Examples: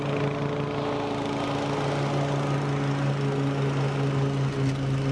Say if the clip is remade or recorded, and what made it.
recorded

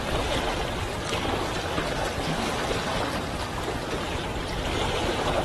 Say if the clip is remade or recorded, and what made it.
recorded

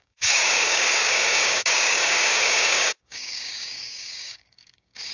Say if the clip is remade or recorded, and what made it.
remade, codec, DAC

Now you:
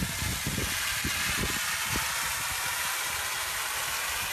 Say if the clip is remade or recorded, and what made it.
recorded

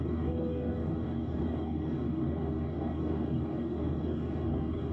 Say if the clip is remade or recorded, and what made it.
remade, codec, DAC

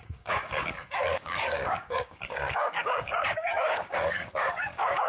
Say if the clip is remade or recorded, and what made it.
remade, codec, DAC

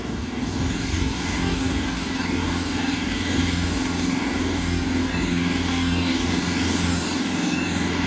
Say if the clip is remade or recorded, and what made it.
remade, codec, DAC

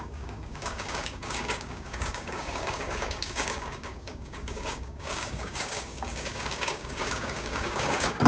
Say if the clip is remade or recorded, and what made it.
remade, codec, DAC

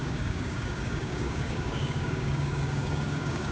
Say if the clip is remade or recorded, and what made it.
remade, codec, DAC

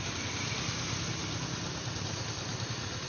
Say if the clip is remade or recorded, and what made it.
recorded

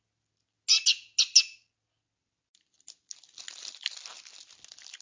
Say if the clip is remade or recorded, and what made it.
recorded